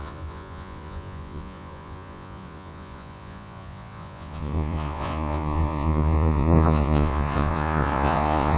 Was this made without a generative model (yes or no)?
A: no